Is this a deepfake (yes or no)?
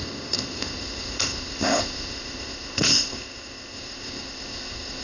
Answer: yes